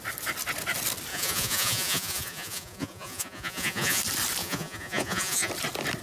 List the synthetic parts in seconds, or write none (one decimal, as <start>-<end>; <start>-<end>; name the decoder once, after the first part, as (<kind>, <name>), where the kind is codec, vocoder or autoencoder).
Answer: 1.1-4.0 (vocoder, Vocos); 4.4-5.5